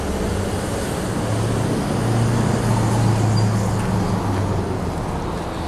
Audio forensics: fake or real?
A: real